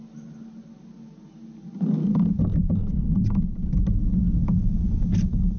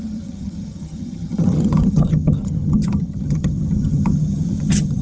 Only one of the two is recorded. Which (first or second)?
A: first